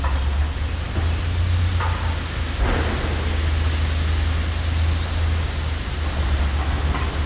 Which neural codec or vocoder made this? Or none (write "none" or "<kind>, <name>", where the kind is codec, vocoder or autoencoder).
none